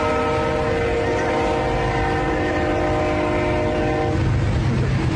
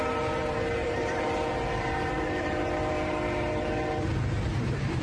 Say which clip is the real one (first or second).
first